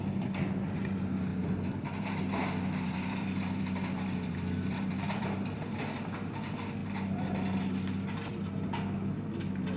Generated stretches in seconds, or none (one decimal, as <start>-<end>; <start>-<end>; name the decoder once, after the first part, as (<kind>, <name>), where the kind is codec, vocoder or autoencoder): 1.3-5.8 (vocoder, BigVGAN v2)